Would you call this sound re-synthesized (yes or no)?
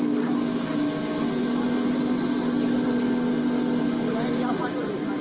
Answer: no